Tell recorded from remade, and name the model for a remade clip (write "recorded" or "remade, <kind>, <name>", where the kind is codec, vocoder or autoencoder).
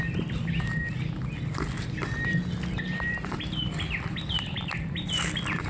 recorded